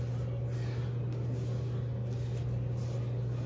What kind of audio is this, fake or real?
real